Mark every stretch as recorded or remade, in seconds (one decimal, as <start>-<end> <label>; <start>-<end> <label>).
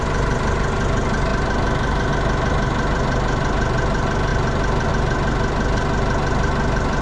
0.0-7.0 recorded